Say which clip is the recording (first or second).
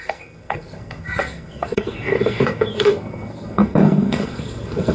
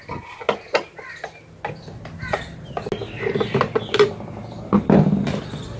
second